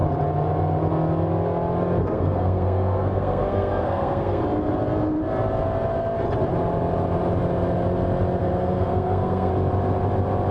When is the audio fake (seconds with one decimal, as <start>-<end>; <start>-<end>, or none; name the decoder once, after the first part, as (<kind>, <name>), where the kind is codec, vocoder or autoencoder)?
2.0-4.4 (codec, SNAC); 8.4-9.5